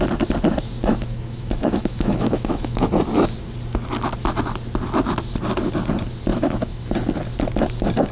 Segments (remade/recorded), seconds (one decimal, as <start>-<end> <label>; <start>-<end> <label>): 0.0-0.9 recorded; 0.9-2.9 remade; 2.9-6.3 recorded; 6.3-6.9 remade; 6.9-8.1 recorded